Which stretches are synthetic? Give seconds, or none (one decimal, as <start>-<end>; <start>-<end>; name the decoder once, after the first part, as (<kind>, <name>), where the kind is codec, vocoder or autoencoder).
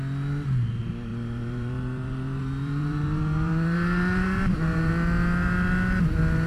1.1-4.9 (vocoder, BigVGAN v2)